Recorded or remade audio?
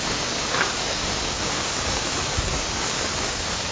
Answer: remade